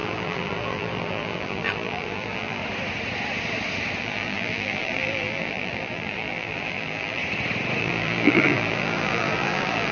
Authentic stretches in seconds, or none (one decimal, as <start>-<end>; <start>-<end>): 2.6-4.0; 7.2-7.8